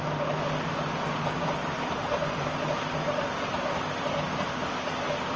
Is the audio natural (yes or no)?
yes